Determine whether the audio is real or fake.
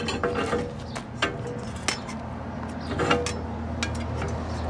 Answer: real